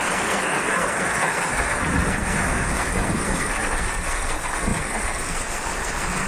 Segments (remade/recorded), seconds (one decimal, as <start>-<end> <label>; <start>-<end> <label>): 0.0-6.3 remade